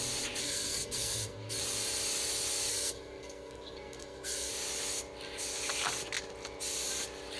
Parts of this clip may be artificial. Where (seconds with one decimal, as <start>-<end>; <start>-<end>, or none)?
0.4-1.6; 2.7-4.5